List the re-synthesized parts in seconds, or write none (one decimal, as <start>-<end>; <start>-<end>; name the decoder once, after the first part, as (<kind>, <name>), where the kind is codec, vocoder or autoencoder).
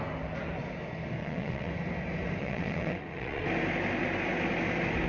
1.2-1.7 (vocoder, WaveNeXt); 2.4-3.4